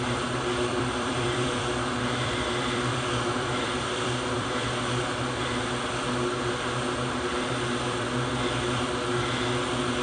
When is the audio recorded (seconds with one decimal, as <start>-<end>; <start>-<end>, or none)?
0.0-0.7; 4.6-10.0